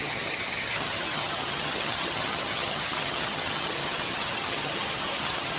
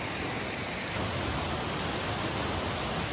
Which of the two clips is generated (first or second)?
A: first